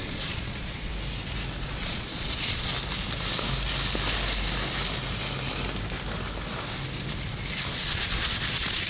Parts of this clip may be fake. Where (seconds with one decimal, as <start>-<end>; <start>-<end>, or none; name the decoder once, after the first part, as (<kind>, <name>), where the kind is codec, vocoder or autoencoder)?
0.0-0.9 (vocoder, Vocos); 1.6-2.7; 7.7-8.9